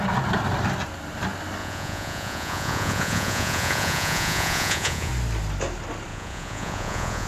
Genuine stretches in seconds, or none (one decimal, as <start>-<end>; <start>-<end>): 0.0-1.6; 5.1-6.1